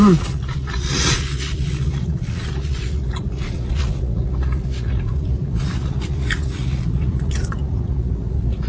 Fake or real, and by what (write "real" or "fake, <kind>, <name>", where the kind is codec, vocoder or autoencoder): fake, vocoder, Vocos